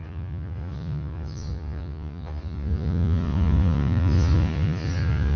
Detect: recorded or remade remade